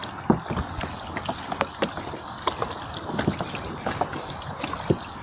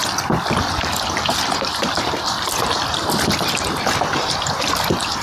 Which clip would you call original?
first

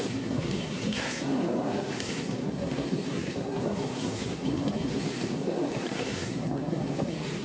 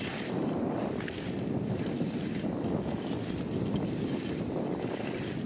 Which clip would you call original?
second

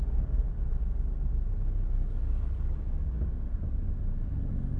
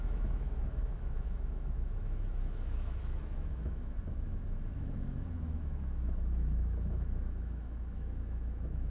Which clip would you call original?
first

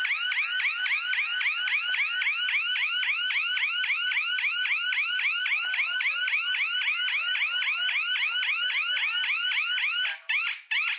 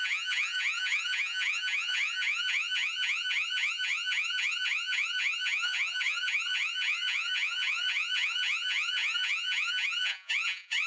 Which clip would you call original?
first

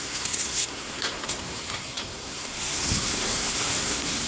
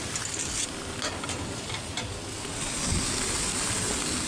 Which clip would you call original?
second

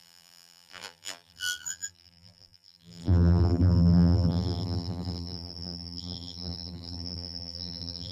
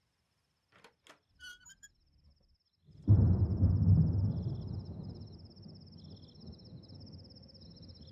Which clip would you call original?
second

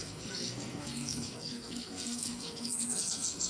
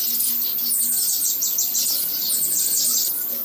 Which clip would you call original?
second